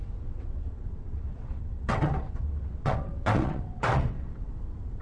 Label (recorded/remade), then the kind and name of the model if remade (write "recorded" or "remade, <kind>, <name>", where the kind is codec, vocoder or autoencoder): remade, vocoder, WaveNeXt